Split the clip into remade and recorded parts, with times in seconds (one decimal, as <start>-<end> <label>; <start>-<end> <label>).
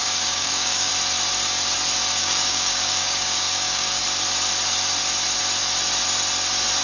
0.0-0.9 remade; 0.9-2.2 recorded; 2.2-4.0 remade; 4.0-6.8 recorded